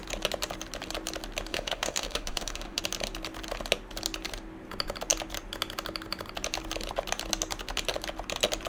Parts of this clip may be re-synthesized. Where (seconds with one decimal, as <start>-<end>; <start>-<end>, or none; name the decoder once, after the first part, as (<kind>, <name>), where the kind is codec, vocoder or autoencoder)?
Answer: 1.5-2.8 (autoencoder, DAC-VAE)